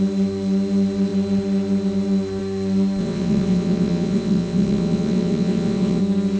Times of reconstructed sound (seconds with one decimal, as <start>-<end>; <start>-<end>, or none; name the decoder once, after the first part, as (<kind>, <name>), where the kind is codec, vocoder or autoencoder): 3.0-6.0 (vocoder, WaveNeXt)